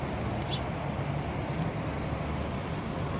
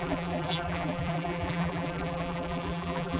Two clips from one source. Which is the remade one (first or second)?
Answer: second